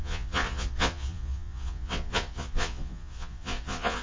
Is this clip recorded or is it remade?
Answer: remade